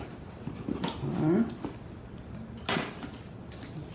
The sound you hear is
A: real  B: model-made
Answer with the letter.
A